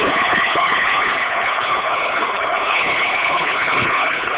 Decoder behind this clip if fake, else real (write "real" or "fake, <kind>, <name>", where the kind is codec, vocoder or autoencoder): fake, codec, HILCodec